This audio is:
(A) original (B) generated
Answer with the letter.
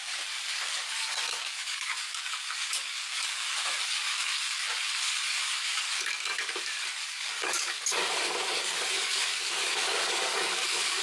B